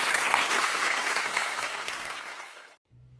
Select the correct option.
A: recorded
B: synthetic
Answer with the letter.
B